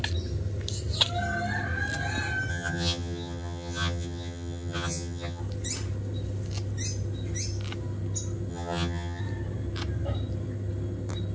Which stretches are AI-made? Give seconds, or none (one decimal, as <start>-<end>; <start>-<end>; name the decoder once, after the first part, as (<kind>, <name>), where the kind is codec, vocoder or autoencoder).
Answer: 2.5-5.4 (vocoder, HiFi-GAN); 8.5-9.2